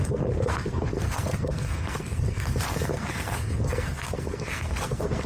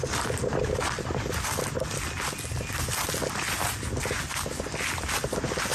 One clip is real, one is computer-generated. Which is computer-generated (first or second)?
first